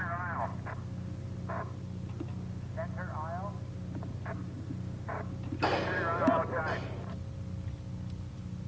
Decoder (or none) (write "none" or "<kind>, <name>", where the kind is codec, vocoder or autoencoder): none